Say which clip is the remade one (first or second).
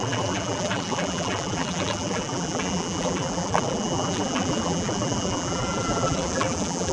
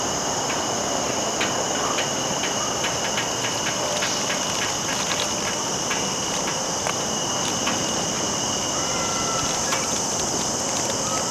first